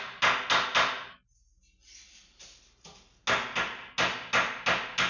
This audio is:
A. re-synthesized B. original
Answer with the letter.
B